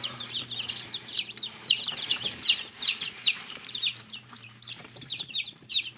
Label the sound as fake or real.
fake